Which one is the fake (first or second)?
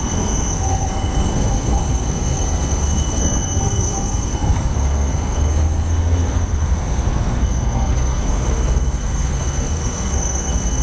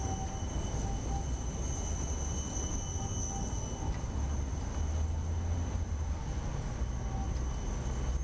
first